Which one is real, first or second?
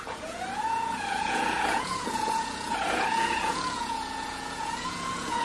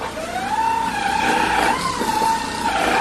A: second